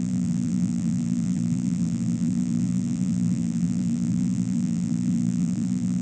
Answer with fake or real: fake